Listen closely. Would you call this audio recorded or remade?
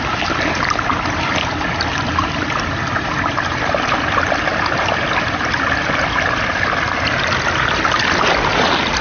recorded